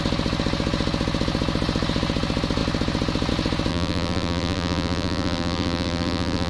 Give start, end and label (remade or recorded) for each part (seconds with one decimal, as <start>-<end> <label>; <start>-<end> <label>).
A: 0.0-3.7 recorded; 3.7-6.5 remade